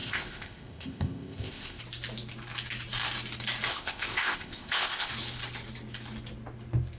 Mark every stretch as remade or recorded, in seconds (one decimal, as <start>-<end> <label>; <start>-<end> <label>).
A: 0.0-1.8 remade; 1.8-3.7 recorded; 3.7-5.1 remade; 5.1-7.0 recorded